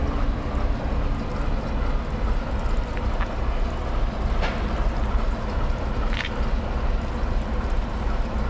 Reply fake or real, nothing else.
real